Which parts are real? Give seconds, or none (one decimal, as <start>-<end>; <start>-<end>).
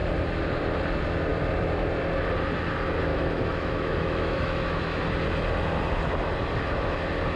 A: 0.0-3.1; 5.0-7.4